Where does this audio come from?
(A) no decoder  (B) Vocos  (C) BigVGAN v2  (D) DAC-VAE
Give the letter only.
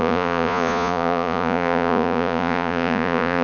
B